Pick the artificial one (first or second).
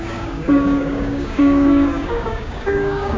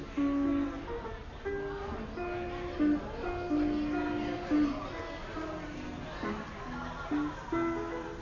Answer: first